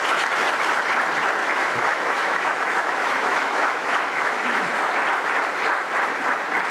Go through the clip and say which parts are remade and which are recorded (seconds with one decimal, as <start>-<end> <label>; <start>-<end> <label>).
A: 0.0-1.4 recorded; 1.4-4.8 remade; 4.8-6.7 recorded